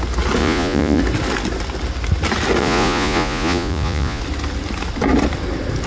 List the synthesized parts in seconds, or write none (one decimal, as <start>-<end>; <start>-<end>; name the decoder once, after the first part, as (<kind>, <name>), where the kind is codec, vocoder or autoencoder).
0.4-1.0 (vocoder, Vocos); 2.6-4.2